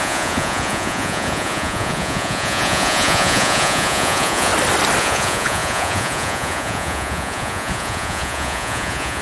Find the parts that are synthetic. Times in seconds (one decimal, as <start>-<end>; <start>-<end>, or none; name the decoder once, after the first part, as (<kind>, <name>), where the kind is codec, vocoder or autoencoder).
0.0-4.5 (vocoder, Vocos); 5.0-9.2